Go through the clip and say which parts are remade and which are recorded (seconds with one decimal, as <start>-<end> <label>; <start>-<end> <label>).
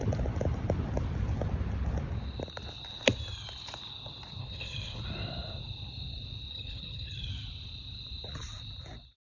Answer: 0.0-4.4 recorded; 4.4-5.0 remade; 5.0-6.5 recorded; 6.5-7.3 remade; 7.3-9.4 recorded